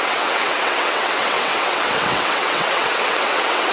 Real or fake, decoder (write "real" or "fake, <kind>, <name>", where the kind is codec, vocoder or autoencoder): fake, vocoder, WaveNeXt